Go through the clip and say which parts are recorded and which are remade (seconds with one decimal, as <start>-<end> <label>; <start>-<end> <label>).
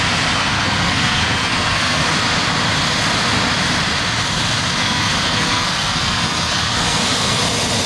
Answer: 0.0-0.4 recorded; 0.4-2.0 remade; 2.0-4.8 recorded; 4.8-7.4 remade; 7.4-7.9 recorded